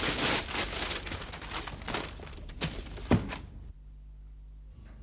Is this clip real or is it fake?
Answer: fake